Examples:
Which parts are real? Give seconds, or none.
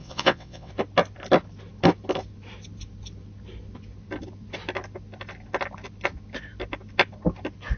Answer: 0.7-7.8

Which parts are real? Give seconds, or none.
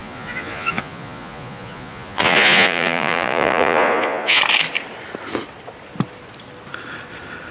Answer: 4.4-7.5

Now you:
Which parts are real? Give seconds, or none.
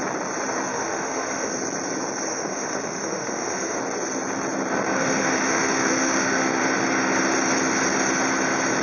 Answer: 0.0-0.7; 1.5-2.3; 3.8-4.9; 6.6-8.8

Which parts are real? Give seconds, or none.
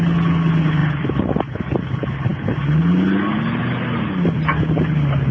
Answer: 0.0-0.8; 1.6-5.3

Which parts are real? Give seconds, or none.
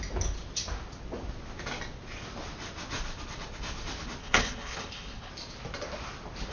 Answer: 0.0-4.2; 5.3-6.5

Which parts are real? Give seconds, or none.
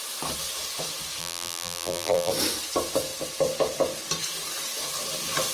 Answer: 0.0-1.2; 2.3-5.5